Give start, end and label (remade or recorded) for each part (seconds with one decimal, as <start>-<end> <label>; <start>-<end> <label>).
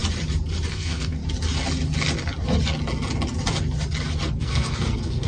0.0-0.7 recorded; 0.7-1.2 remade; 1.2-4.4 recorded; 4.4-5.3 remade